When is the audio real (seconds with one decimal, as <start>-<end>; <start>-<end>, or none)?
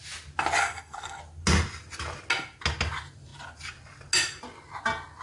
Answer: 0.0-0.6; 1.2-5.2